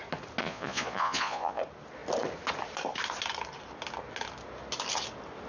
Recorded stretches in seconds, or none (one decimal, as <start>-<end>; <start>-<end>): 0.0-0.4; 1.6-5.5

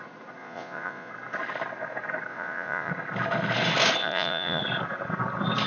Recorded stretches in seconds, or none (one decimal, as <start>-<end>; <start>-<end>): 0.0-0.4; 1.1-2.3; 2.9-4.0; 4.6-5.7

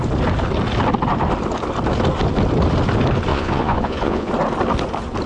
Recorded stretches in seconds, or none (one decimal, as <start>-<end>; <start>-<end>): 0.0-3.3; 4.3-5.3

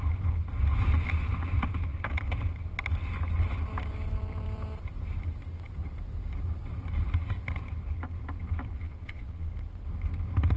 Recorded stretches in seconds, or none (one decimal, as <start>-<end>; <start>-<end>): 0.0-8.7; 9.5-10.6

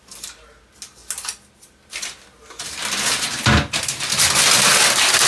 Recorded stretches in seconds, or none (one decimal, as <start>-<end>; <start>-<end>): 0.0-5.3

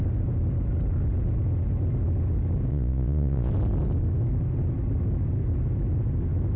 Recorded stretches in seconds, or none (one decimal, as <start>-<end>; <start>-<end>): 0.0-2.7; 3.5-6.6

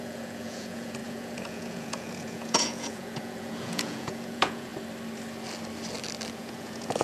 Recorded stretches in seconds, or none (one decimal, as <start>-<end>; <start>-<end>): 4.7-6.3

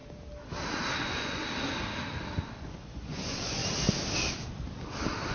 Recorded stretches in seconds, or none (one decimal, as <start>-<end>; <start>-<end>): 0.0-1.0; 1.4-2.6; 3.6-5.3